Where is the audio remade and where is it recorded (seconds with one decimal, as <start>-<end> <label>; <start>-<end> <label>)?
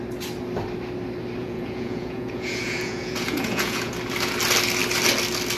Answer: 0.0-1.4 recorded; 1.4-3.9 remade; 3.9-5.6 recorded